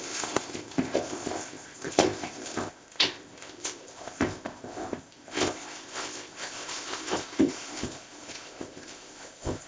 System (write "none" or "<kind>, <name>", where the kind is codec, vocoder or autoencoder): codec, ZipCodec